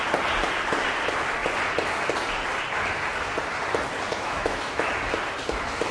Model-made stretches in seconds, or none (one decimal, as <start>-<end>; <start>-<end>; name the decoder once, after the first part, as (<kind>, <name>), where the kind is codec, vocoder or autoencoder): 4.1-4.9 (autoencoder, DAC-VAE)